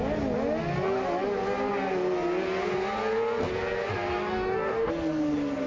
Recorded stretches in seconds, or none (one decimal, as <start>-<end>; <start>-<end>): 0.0-4.1; 4.9-5.7